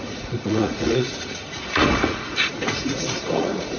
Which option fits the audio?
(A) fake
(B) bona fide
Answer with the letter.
A